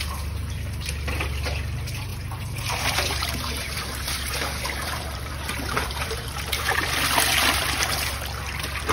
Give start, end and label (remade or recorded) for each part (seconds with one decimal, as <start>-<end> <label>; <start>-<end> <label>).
0.0-2.1 recorded; 2.1-6.9 remade; 6.9-8.9 recorded